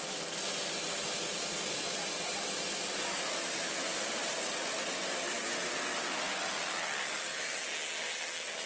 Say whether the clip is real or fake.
real